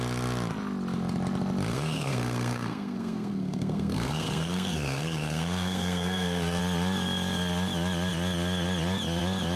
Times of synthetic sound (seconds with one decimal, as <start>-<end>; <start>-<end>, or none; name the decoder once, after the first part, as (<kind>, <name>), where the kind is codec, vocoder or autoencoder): 1.7-6.6 (codec, SNAC)